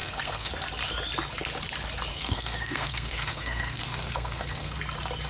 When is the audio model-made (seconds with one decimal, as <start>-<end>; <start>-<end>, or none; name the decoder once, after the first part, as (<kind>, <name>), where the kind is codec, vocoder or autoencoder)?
0.0-0.5 (codec, SNAC); 2.1-4.8